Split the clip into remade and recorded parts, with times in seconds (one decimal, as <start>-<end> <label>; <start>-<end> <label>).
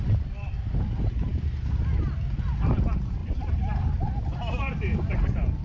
0.0-1.3 remade; 1.3-2.7 recorded; 2.7-5.6 remade